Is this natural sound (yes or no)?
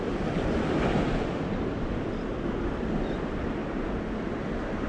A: yes